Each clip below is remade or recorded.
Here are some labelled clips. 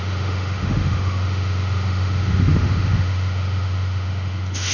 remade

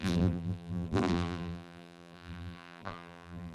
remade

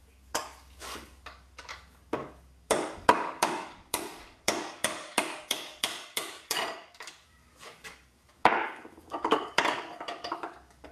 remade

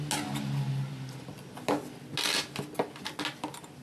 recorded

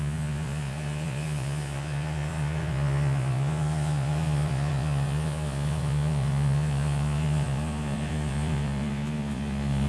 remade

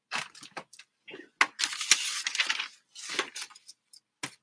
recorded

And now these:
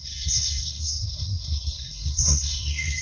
remade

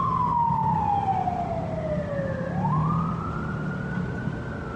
recorded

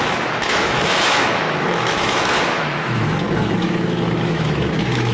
remade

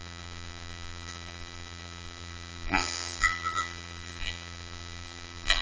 remade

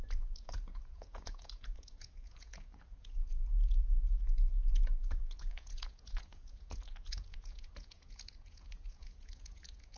remade